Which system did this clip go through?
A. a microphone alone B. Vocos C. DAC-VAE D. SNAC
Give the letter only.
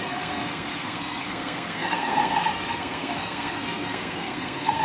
D